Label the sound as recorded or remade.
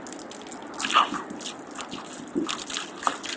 recorded